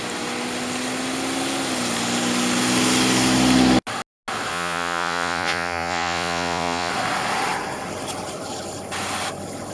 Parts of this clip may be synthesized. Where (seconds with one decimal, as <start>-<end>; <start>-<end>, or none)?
4.5-6.9